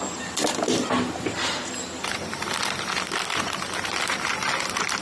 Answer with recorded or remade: recorded